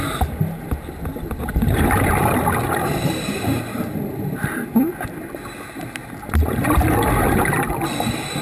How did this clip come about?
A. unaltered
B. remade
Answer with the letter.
A